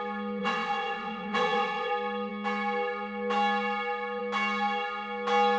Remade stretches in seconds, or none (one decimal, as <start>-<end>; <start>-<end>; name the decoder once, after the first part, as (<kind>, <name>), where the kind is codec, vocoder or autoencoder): 0.4-1.9 (vocoder, WaveNeXt)